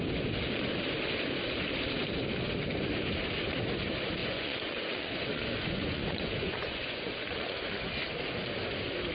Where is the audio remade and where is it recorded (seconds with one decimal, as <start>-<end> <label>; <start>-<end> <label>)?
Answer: 0.0-4.2 recorded; 4.2-7.9 remade; 7.9-9.1 recorded